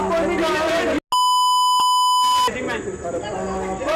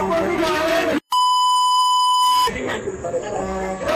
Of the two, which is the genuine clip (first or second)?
first